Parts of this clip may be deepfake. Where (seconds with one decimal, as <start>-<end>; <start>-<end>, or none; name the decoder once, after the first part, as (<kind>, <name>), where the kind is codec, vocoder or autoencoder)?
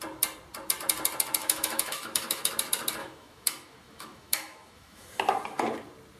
1.4-2.5 (autoencoder, DAC-VAE); 3.0-5.1